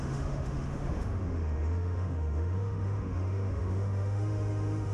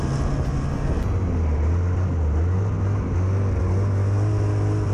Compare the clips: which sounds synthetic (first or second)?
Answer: first